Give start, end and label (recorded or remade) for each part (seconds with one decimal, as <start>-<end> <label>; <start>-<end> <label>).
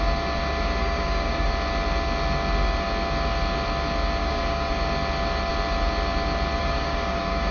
0.0-0.8 recorded; 0.8-1.5 remade; 1.5-4.2 recorded; 4.2-4.7 remade; 4.7-6.6 recorded; 6.6-7.5 remade